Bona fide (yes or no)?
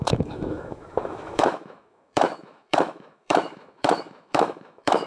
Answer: no